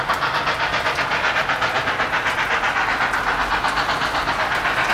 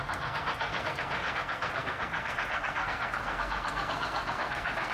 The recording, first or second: first